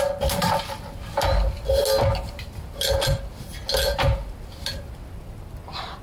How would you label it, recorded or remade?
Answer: recorded